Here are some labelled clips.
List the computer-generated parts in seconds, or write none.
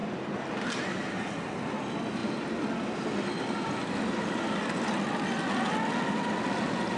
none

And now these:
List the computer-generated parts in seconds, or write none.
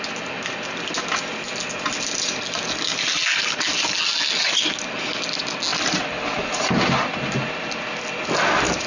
none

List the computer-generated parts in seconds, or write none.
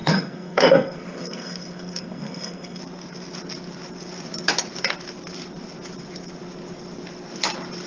0.0-2.8 (codec, SNAC)